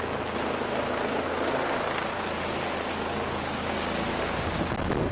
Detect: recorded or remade recorded